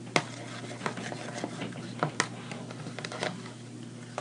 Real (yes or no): yes